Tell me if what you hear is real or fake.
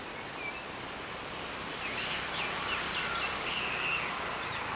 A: real